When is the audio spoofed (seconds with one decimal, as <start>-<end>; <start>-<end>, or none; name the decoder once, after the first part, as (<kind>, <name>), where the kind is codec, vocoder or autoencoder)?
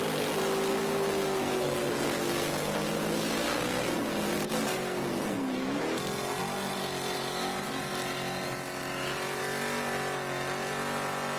0.7-5.8 (codec, SNAC)